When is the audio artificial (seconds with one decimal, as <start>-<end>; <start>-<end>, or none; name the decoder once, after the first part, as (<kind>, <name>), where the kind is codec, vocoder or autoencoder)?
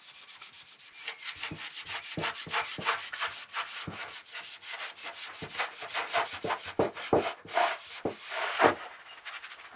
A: none